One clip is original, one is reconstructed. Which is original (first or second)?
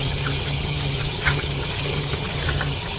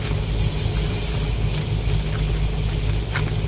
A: second